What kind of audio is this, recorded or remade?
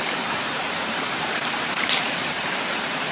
remade